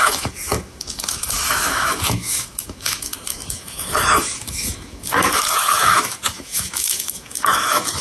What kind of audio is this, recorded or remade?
remade